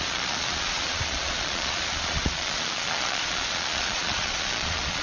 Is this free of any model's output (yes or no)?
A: no